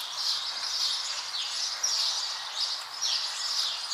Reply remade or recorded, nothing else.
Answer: recorded